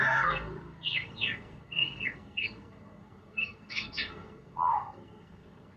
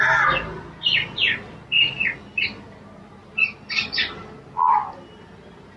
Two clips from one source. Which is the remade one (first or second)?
first